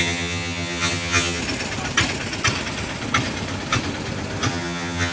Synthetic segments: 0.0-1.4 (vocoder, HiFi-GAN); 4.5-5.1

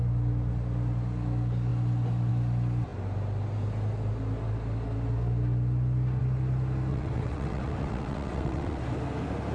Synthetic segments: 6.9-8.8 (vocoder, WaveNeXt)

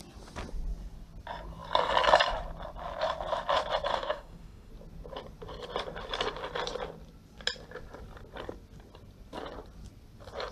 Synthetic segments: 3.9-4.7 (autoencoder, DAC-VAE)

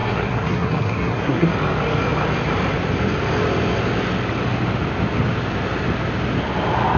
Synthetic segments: 0.0-1.5 (codec, SNAC)

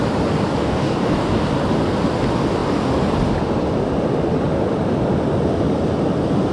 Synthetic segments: 0.6-1.4 (codec, DAC)

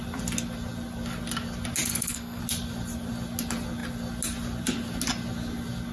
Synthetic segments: 1.9-2.4 (codec, SNAC)

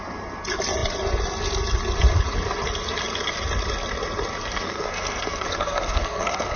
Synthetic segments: 4.4-6.6 (codec, SNAC)